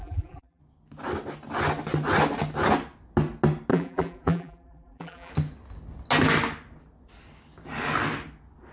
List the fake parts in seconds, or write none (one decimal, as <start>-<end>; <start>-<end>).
0.0-0.6; 3.7-5.3